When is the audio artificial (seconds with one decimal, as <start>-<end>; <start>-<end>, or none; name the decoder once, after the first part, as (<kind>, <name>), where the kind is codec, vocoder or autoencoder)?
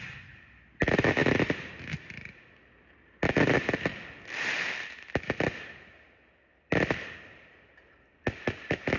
6.5-7.9 (vocoder, BigVGAN v2)